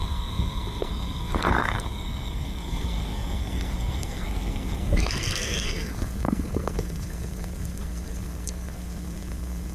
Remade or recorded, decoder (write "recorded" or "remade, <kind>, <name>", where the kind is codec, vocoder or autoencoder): remade, codec, SNAC